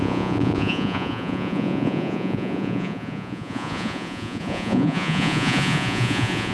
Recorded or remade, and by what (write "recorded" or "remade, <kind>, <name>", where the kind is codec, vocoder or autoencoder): remade, vocoder, Vocos